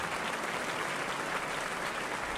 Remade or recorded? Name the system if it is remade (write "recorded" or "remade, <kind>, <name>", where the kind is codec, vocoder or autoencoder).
recorded